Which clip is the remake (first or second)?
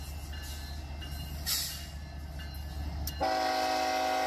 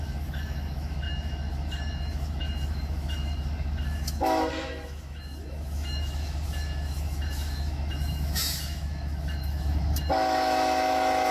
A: second